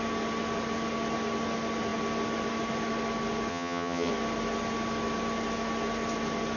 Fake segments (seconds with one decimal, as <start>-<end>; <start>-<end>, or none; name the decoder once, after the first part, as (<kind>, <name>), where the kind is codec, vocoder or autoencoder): 3.5-4.1 (vocoder, HiFi-GAN)